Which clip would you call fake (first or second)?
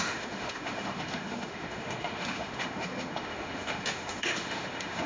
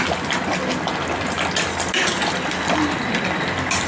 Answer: first